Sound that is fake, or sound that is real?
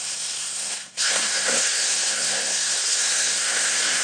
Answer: fake